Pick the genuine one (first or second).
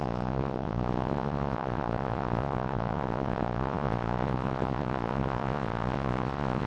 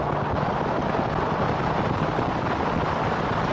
second